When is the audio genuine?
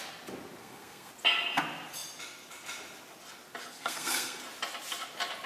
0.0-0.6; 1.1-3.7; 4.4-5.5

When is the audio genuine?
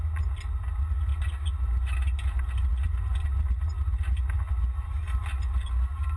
0.0-6.2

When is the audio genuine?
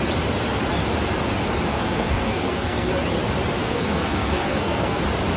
0.0-1.7; 2.9-3.6; 5.0-5.4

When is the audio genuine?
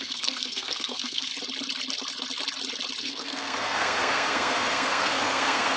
1.3-3.0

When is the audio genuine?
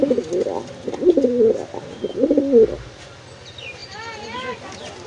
0.0-5.1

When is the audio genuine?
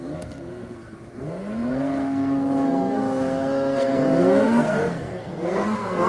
none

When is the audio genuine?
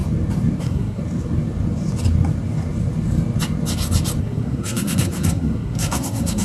0.0-0.6; 1.0-4.2